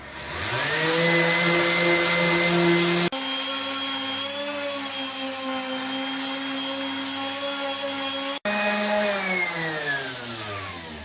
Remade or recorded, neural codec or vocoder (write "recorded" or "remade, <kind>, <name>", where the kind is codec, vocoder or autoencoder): recorded